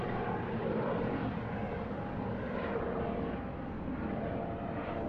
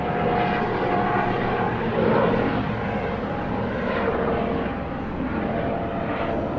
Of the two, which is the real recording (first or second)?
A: second